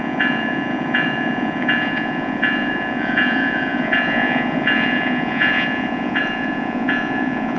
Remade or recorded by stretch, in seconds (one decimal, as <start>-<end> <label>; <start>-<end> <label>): 0.0-7.6 remade